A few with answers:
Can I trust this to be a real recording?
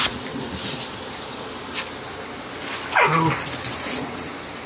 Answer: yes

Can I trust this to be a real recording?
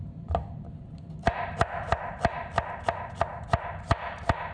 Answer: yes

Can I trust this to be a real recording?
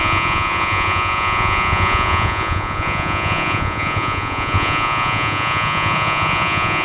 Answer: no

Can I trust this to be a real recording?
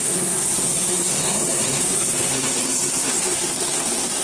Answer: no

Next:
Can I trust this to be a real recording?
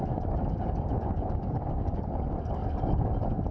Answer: no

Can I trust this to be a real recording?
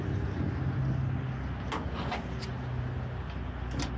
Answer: yes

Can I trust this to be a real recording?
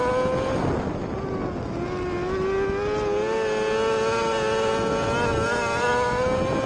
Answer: yes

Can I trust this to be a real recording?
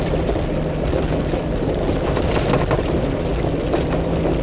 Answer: yes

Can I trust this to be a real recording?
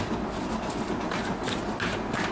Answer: yes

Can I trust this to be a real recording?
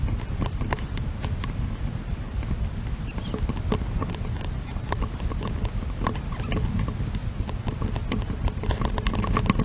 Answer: yes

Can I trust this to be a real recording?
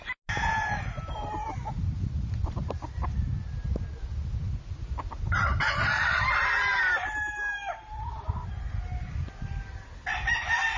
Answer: yes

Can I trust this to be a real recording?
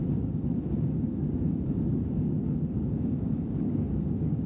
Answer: no